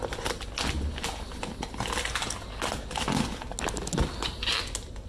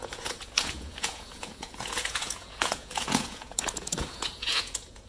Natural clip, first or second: first